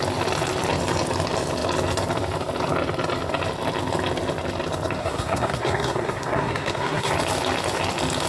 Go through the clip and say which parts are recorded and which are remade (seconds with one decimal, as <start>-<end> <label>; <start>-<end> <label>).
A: 0.0-5.0 recorded; 5.0-7.1 remade; 7.1-8.3 recorded